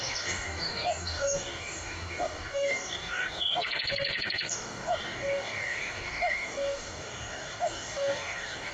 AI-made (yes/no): yes